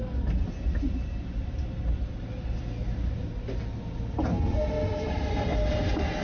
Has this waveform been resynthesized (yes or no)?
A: no